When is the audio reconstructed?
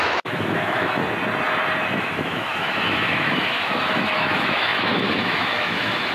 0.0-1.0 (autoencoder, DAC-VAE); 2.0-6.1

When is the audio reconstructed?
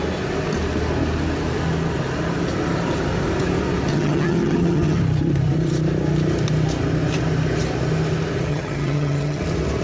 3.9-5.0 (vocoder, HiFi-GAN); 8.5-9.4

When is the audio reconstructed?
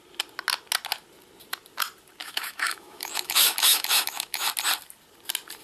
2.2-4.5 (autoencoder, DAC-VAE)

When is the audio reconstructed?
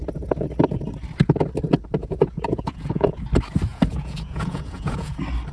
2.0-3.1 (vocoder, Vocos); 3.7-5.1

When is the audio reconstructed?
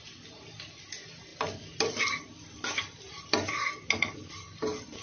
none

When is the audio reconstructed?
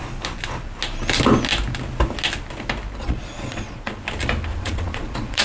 3.0-4.0 (vocoder, Vocos); 4.5-5.4